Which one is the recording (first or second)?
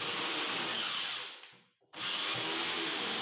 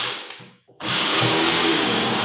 first